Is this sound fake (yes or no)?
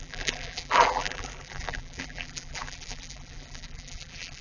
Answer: yes